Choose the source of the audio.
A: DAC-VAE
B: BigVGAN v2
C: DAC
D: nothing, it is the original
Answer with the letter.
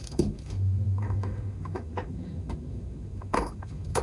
A